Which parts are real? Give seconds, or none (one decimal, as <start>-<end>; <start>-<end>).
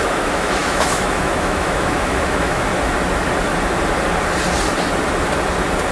2.7-5.9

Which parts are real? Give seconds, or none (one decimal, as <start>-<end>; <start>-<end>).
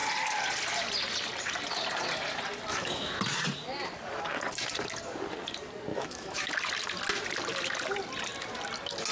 0.0-2.7; 3.2-5.9; 6.5-9.1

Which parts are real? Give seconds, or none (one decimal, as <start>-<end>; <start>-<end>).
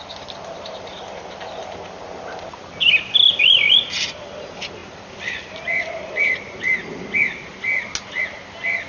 0.0-8.9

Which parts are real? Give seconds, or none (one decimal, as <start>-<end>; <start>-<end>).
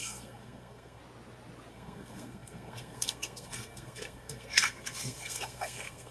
1.0-1.7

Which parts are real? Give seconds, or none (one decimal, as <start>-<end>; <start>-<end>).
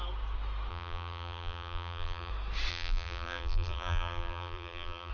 0.0-0.7; 2.3-2.7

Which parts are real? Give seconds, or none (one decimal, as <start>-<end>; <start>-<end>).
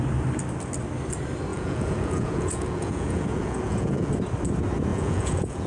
0.0-1.5; 4.1-4.9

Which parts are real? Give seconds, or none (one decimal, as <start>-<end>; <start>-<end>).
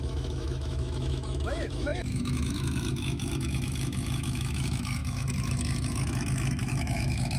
none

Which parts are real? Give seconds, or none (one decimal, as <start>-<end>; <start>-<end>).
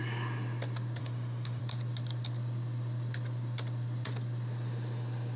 0.0-1.0; 1.6-5.4